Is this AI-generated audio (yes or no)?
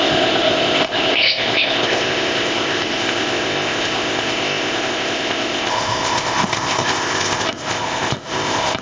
yes